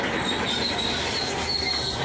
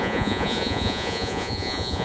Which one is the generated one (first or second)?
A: second